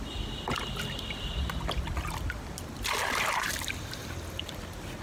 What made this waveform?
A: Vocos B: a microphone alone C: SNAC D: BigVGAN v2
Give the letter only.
B